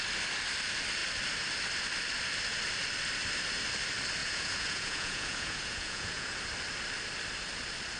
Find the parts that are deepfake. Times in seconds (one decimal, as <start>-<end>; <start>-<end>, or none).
4.2-6.4